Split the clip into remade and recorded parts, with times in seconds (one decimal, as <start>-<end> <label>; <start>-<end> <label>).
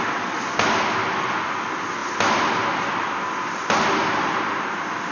0.0-5.1 recorded